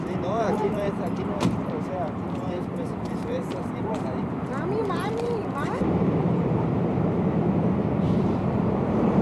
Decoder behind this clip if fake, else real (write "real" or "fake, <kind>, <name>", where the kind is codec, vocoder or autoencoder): fake, vocoder, BigVGAN v2